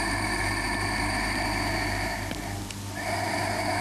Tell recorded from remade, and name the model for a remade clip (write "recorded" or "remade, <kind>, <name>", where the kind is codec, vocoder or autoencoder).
recorded